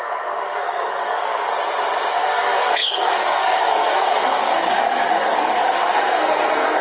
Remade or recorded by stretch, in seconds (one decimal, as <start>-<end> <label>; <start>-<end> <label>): 0.0-1.5 remade; 1.5-2.1 recorded; 2.1-6.8 remade